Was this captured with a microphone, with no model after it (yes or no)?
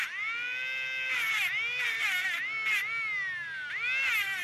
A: yes